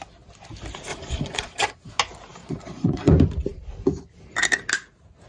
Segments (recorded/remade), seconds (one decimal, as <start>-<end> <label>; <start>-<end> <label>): 0.0-0.9 recorded; 0.9-2.0 remade; 2.0-2.4 recorded; 2.4-3.1 remade; 3.1-5.3 recorded